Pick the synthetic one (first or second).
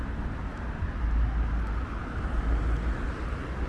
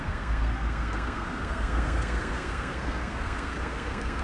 second